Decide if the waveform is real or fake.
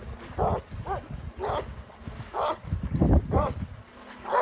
real